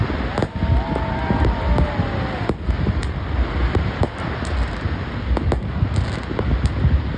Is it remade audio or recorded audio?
recorded